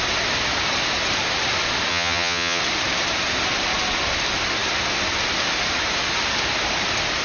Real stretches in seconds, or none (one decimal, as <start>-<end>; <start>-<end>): 0.0-1.9; 2.6-7.2